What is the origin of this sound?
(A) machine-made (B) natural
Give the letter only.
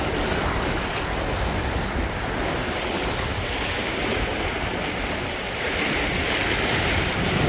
B